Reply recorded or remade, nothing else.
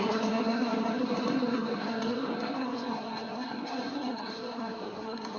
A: remade